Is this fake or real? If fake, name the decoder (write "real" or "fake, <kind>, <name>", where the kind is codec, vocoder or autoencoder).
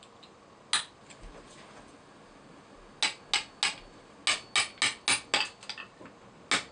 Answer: real